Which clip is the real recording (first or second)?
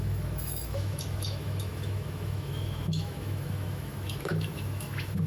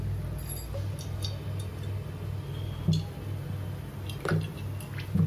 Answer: second